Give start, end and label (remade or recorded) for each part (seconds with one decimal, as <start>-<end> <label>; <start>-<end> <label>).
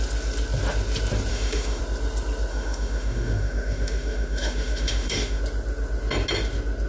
0.0-1.3 recorded; 1.3-1.8 remade; 1.8-2.5 recorded; 2.5-5.4 remade; 5.4-6.9 recorded